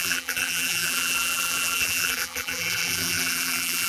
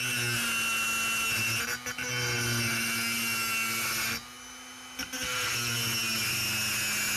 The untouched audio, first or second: second